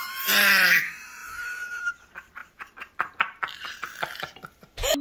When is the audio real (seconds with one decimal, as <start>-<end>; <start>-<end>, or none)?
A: 0.0-1.2; 1.9-2.4; 3.8-5.0